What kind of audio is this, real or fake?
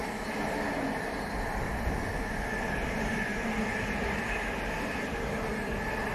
real